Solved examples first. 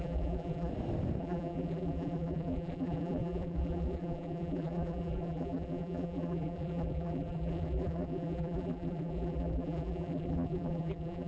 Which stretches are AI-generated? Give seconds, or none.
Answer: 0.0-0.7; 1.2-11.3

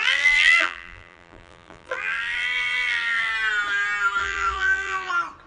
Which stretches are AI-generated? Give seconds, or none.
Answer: 0.0-3.3; 4.2-5.1

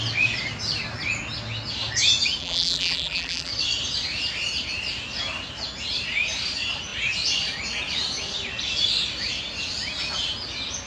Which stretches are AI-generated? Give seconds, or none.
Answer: 2.4-3.5

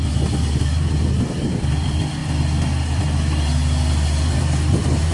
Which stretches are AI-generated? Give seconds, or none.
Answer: none

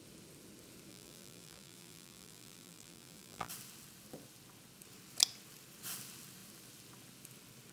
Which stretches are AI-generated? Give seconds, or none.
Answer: 0.9-3.5

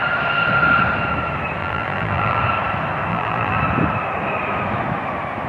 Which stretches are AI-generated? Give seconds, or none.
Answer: 1.6-2.4; 3.1-3.6

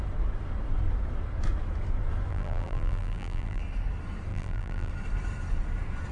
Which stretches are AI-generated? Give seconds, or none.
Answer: 2.3-3.6; 4.3-4.9